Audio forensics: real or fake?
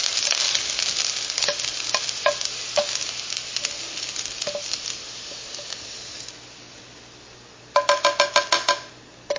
real